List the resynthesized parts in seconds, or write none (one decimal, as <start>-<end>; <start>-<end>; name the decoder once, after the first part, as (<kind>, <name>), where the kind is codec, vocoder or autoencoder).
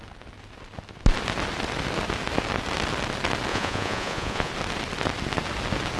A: 3.5-4.5 (vocoder, Vocos)